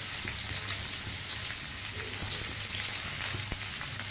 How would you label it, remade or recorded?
recorded